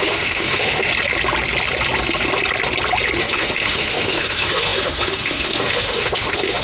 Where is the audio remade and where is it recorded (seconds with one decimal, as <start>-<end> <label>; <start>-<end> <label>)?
0.0-0.9 remade; 0.9-3.2 recorded; 3.2-6.6 remade